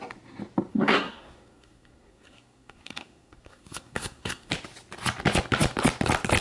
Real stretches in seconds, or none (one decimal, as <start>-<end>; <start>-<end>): 0.0-0.7; 4.5-6.4